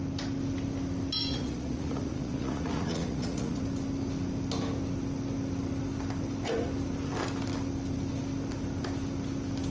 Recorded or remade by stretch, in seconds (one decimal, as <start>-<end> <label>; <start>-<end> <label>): 0.0-1.3 recorded; 1.3-3.6 remade; 3.6-9.7 recorded